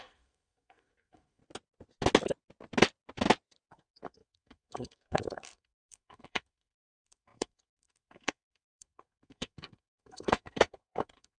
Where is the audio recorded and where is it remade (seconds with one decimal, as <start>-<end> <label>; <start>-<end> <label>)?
0.0-1.4 remade; 1.4-3.7 recorded; 3.7-11.4 remade